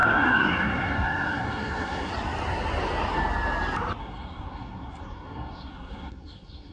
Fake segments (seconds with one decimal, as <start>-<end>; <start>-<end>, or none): 0.0-2.1; 4.0-6.7